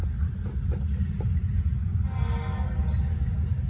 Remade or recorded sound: recorded